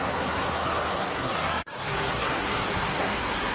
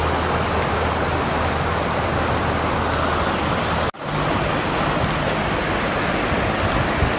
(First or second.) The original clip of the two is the second